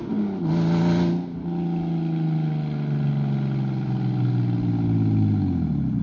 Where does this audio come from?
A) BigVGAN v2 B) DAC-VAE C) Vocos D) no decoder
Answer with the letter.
D